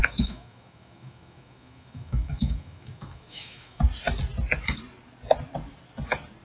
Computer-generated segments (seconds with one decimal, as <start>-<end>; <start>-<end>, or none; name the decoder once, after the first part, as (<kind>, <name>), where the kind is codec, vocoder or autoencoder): 0.0-3.8 (autoencoder, DAC-VAE)